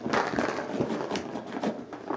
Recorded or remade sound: recorded